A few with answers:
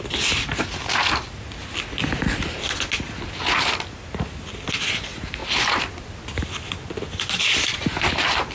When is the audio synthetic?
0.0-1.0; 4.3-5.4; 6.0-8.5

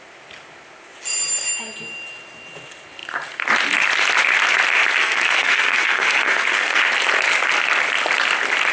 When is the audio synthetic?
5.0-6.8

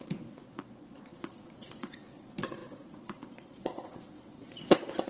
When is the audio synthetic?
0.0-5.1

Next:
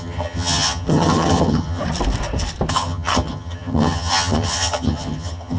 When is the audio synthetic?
0.0-1.8; 2.7-5.6

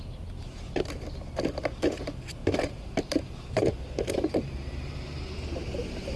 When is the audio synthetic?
2.4-4.5

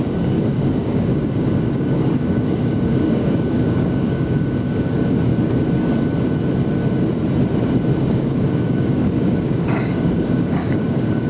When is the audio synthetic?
0.0-5.3; 8.0-11.3